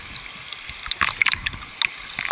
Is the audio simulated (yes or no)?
no